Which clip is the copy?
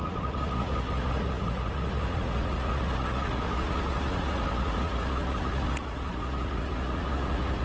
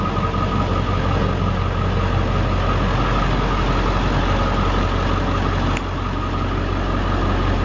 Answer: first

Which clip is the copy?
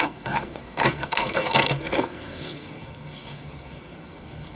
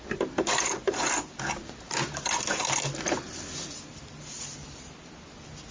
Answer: first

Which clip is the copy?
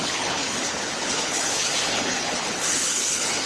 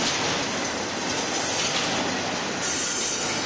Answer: first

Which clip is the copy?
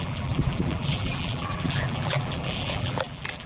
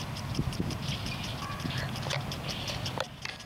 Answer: first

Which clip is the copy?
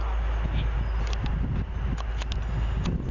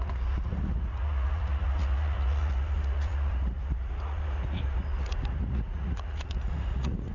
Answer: second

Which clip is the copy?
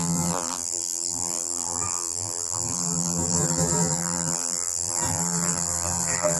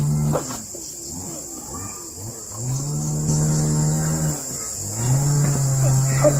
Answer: first